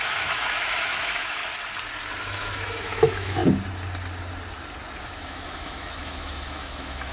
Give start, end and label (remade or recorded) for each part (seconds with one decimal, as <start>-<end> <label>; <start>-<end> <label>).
0.0-1.4 remade; 1.4-2.3 recorded; 2.3-3.4 remade; 3.4-5.0 recorded; 5.0-7.1 remade